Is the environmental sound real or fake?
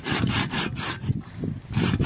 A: real